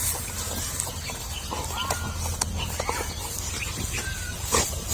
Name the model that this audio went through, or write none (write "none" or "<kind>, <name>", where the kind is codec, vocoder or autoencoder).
none